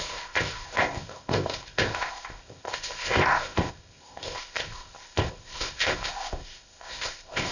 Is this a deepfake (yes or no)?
yes